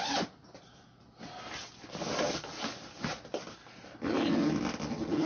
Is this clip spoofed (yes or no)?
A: no